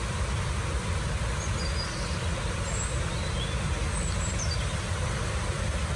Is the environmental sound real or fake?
real